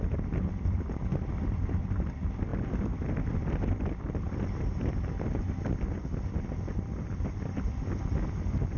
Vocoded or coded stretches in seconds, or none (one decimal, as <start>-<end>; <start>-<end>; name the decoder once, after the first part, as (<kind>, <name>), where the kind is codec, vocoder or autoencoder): 2.5-4.9 (vocoder, BigVGAN v2)